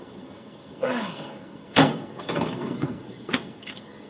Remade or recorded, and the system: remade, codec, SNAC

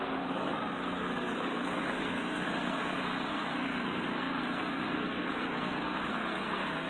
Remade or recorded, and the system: remade, codec, SNAC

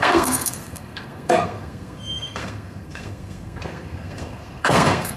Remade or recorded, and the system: remade, codec, SNAC